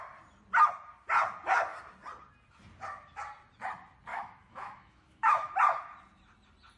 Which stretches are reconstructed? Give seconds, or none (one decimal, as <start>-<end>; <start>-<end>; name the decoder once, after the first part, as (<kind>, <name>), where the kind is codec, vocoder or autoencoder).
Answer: 4.1-5.5 (autoencoder, DAC-VAE)